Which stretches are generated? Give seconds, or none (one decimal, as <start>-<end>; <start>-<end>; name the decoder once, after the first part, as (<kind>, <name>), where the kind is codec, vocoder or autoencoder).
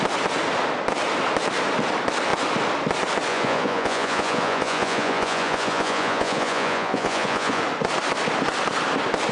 3.3-7.6 (vocoder, Vocos)